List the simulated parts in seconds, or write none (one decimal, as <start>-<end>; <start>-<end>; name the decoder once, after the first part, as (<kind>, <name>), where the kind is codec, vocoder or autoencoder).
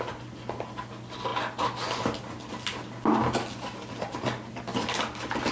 none